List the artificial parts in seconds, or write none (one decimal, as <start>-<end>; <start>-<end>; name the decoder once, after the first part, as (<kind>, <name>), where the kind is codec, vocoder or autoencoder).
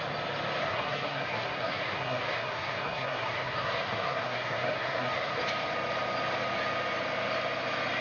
0.6-5.4 (codec, SNAC)